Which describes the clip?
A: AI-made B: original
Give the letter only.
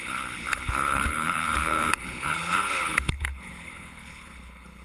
A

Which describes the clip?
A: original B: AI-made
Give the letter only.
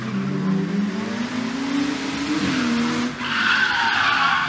A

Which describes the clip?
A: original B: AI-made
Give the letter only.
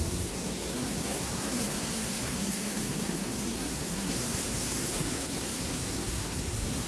B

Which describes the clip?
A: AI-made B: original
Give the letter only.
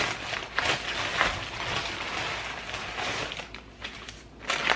B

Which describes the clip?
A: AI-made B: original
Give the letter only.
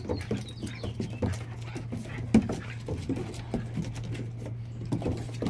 B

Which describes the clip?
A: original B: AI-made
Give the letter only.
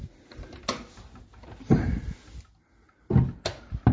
A